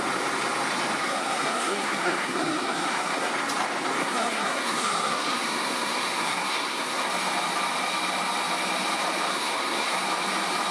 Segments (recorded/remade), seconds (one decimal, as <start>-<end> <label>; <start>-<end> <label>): 0.0-1.0 recorded; 1.0-3.3 remade; 3.3-4.0 recorded; 4.0-7.1 remade; 7.1-9.3 recorded; 9.3-10.1 remade; 10.1-10.7 recorded